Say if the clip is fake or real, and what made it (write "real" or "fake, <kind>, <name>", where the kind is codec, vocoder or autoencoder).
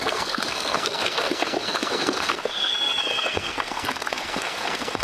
fake, codec, SNAC